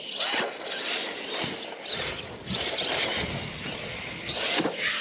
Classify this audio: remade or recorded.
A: recorded